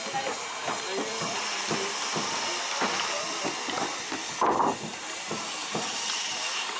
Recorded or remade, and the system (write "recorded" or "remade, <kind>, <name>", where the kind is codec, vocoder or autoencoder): recorded